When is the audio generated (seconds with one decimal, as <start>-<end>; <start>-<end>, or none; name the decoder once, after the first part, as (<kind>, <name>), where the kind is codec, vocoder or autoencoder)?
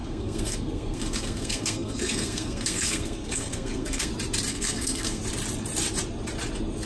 0.0-4.1 (codec, SNAC); 4.5-5.2